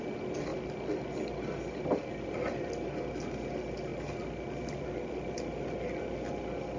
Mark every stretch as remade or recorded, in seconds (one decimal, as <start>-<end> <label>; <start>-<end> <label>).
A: 0.0-6.8 recorded